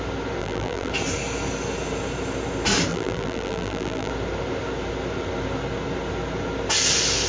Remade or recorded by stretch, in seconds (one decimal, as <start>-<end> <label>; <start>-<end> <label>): 0.0-0.4 recorded; 0.4-0.9 remade; 0.9-2.9 recorded; 2.9-4.1 remade; 4.1-7.3 recorded